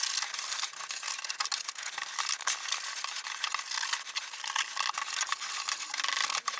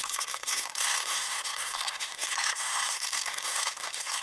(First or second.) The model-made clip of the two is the second